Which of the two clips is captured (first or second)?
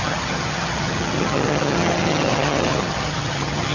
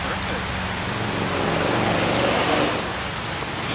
second